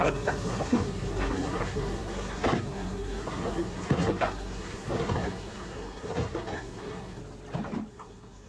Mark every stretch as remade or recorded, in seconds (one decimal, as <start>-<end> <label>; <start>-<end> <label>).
0.0-7.2 remade; 7.2-7.9 recorded; 7.9-8.5 remade